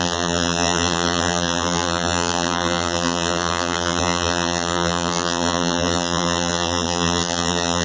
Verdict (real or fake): fake